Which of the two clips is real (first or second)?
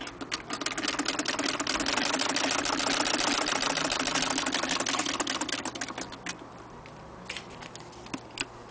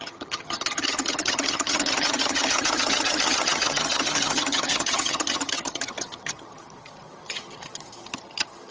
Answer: first